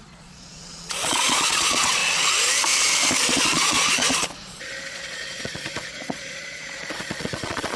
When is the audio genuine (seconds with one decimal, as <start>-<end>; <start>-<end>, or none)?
2.0-3.4